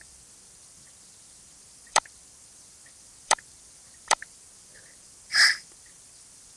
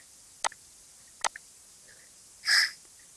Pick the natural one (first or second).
second